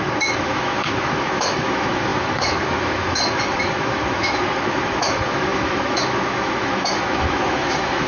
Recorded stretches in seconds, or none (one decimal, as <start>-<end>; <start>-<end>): none